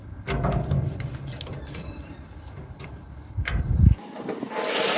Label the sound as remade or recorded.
recorded